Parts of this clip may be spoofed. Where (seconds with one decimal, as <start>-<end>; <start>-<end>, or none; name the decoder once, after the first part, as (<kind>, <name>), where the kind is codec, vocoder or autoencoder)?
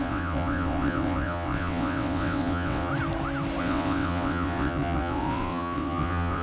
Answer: 0.0-2.9 (vocoder, WaveNeXt); 3.6-6.4